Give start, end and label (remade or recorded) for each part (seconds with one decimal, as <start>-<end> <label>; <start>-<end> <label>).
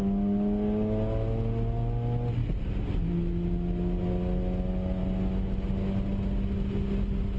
0.0-7.4 recorded